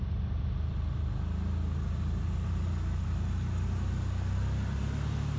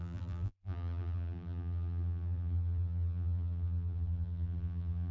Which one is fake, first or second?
second